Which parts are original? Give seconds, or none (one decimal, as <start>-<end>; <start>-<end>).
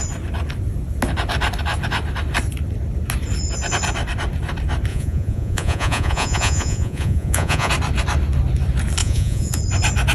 0.0-4.9; 7.7-9.0; 9.6-10.1